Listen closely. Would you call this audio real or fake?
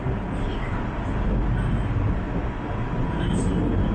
real